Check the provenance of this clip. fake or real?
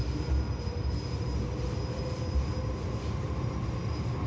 real